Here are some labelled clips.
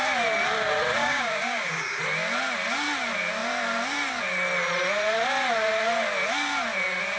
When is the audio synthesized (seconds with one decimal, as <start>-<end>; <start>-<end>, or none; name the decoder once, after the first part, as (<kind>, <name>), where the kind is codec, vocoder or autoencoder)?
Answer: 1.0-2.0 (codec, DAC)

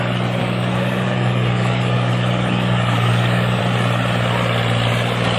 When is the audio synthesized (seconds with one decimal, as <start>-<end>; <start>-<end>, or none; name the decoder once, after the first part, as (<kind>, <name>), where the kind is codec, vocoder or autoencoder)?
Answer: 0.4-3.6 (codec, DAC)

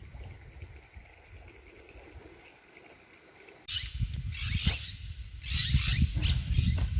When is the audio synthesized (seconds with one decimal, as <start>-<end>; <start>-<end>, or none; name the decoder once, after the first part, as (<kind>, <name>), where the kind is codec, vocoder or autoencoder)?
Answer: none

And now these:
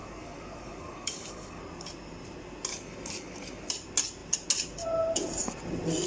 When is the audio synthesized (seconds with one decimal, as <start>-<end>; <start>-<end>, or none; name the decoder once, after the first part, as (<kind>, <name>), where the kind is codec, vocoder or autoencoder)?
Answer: 0.0-1.6 (codec, DAC); 2.7-3.7

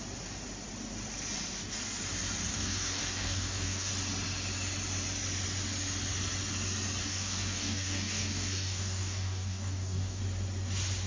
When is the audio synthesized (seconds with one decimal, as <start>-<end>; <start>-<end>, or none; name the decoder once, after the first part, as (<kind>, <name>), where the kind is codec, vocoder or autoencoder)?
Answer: 2.5-3.9 (codec, DAC); 7.0-10.2